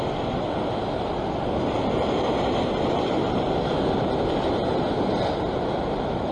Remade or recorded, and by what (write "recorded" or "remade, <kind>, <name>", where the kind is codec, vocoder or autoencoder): recorded